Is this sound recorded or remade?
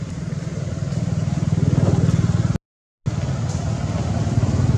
recorded